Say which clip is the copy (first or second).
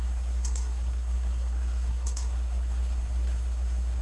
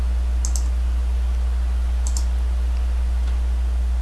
first